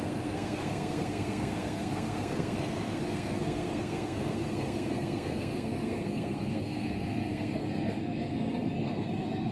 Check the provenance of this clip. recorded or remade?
remade